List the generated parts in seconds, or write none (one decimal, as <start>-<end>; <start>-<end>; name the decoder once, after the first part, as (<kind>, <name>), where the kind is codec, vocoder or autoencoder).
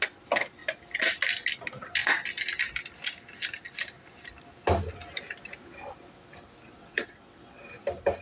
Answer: 6.8-7.6 (vocoder, WaveNeXt)